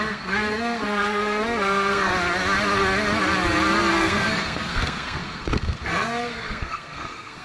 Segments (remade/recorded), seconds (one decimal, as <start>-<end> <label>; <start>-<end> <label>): 0.0-2.1 remade; 2.1-3.9 recorded; 3.9-7.4 remade